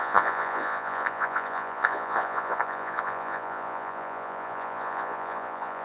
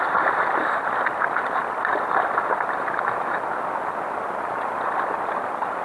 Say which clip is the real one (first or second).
second